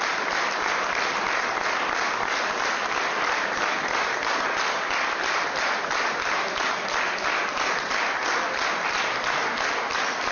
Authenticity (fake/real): real